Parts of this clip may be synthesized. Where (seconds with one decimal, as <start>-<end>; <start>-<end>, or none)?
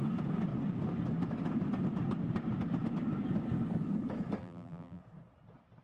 4.4-5.0